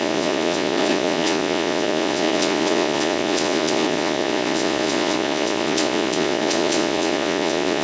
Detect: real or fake fake